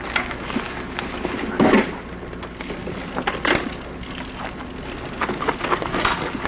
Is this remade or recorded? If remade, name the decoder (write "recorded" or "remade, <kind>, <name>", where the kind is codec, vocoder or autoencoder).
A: recorded